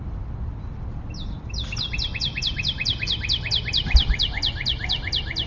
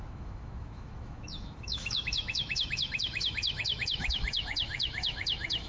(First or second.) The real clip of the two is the first